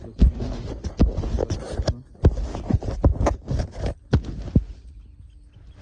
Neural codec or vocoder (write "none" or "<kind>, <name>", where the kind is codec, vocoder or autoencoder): none